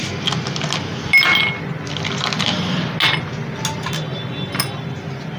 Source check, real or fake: real